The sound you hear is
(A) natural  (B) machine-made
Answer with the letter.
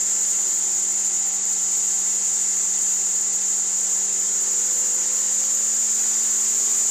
A